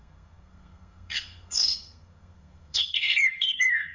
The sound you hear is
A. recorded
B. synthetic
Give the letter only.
B